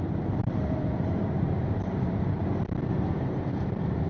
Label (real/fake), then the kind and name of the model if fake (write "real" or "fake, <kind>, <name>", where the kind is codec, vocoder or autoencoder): fake, vocoder, BigVGAN v2